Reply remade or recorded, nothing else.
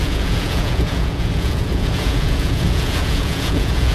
remade